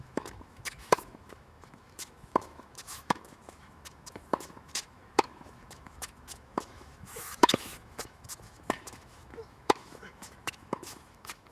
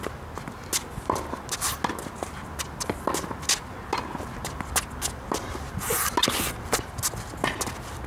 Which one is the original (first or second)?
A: second